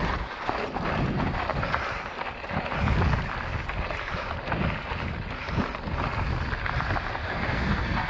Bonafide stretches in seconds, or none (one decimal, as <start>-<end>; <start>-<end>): 0.0-7.2